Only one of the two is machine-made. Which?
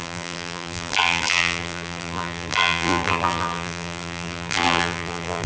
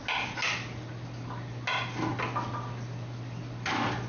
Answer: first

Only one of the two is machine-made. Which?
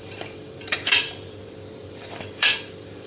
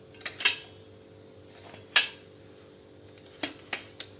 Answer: first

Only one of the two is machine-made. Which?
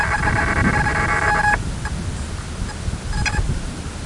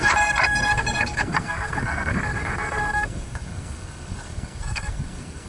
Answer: second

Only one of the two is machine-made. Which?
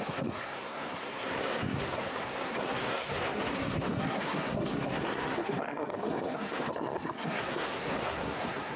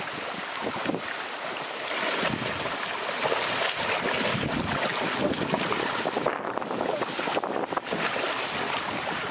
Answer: first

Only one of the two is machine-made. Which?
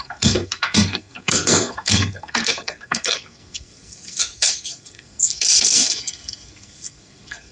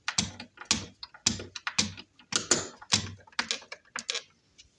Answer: first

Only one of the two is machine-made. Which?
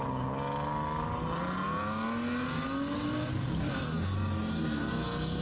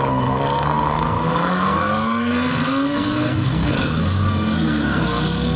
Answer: second